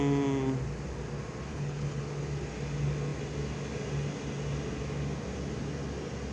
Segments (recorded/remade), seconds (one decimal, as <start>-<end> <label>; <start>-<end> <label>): 0.0-1.5 recorded; 1.5-2.0 remade; 2.0-6.3 recorded